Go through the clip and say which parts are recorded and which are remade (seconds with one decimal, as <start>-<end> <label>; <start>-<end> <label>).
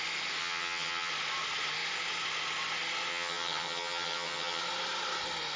0.0-0.4 recorded; 0.4-1.1 remade; 1.1-3.1 recorded; 3.1-4.6 remade; 4.6-5.6 recorded